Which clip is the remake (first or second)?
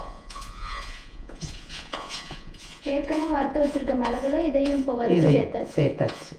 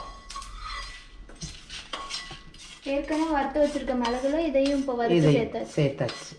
first